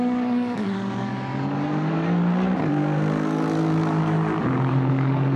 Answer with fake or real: fake